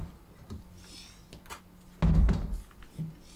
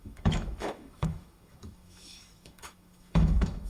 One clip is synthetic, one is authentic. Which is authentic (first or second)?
first